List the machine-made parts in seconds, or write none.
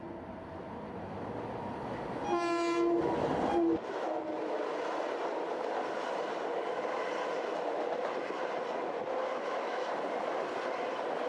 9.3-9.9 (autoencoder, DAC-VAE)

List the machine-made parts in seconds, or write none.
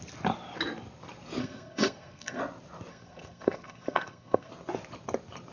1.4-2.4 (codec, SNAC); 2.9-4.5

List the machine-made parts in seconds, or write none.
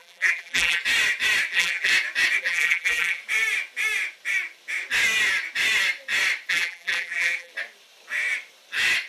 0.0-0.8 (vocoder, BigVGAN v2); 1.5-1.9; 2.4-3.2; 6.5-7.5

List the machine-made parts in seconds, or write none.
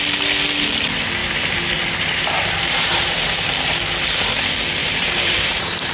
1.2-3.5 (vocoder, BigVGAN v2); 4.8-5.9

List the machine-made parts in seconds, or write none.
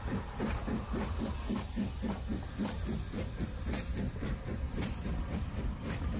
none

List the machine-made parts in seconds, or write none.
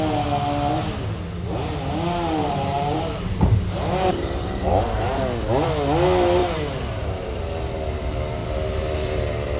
2.4-5.2 (vocoder, BigVGAN v2); 6.4-7.4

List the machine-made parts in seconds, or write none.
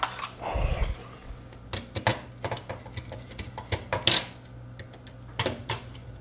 none